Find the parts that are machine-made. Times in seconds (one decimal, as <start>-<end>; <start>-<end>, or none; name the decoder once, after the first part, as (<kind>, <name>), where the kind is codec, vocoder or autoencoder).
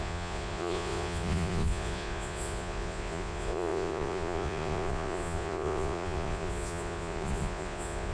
0.0-8.1 (vocoder, Vocos)